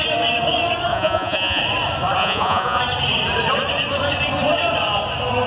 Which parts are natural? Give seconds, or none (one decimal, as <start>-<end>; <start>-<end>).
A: 0.0-0.9; 1.6-2.2; 2.8-5.5